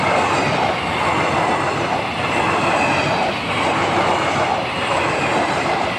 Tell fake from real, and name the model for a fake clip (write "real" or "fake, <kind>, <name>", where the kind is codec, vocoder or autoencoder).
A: real